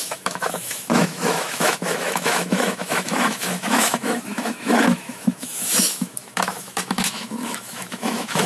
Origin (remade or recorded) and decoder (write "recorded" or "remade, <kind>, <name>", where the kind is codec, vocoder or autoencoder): remade, autoencoder, DAC-VAE